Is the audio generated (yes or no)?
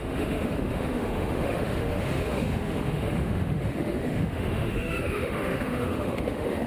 yes